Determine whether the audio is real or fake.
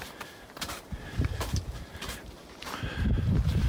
fake